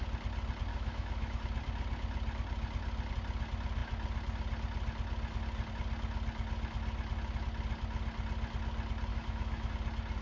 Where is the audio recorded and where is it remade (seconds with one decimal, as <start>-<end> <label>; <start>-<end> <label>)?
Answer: 0.0-0.7 recorded; 0.7-1.4 remade; 1.4-9.1 recorded; 9.1-9.7 remade; 9.7-10.2 recorded